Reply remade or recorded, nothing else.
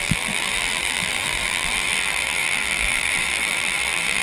remade